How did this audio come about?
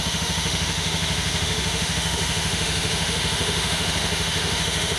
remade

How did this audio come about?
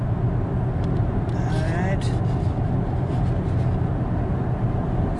recorded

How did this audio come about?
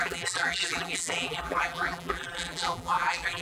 remade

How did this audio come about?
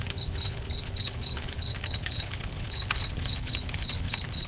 remade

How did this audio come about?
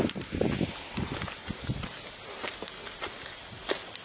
recorded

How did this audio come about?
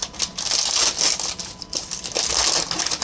recorded